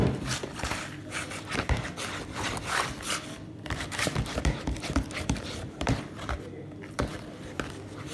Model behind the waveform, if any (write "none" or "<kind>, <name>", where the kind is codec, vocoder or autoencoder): vocoder, BigVGAN v2